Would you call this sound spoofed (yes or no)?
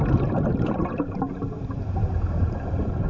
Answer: yes